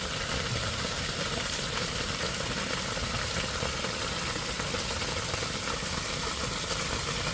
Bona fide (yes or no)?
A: yes